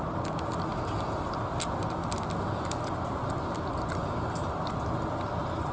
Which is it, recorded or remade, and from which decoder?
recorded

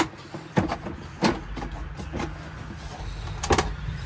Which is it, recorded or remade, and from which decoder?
recorded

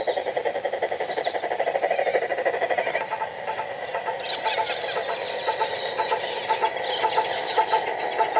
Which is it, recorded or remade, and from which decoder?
recorded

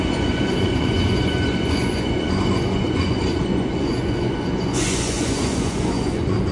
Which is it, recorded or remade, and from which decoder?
remade, vocoder, Vocos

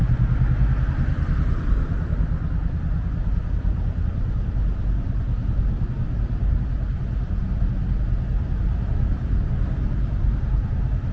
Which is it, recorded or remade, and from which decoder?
recorded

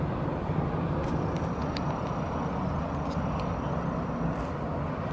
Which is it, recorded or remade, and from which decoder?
recorded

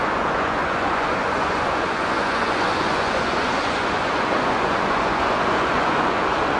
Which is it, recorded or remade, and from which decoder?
remade, vocoder, Vocos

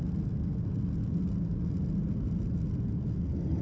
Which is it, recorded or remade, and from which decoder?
recorded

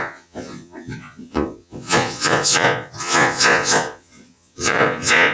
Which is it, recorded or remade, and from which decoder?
remade, vocoder, Vocos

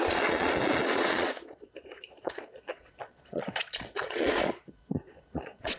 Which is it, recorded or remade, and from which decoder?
remade, vocoder, Vocos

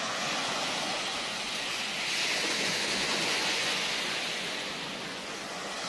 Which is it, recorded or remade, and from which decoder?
remade, vocoder, Vocos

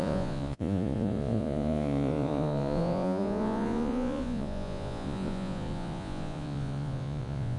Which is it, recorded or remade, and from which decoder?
remade, vocoder, Vocos